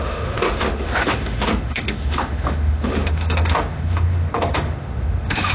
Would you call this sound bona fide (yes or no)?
no